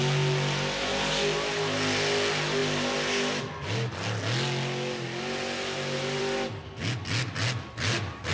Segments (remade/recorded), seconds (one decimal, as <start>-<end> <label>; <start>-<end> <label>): 0.0-8.3 recorded